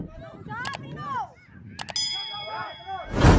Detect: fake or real real